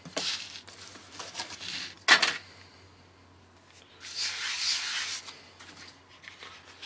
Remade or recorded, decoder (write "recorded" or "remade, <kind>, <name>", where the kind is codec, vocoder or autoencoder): recorded